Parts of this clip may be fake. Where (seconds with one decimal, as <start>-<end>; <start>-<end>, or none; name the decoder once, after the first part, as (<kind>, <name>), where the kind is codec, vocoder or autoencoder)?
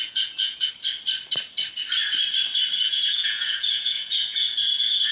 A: 0.0-0.7 (vocoder, Vocos); 2.8-5.1